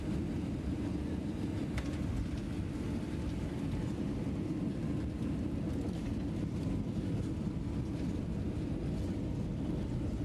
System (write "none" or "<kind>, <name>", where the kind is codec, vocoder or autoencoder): none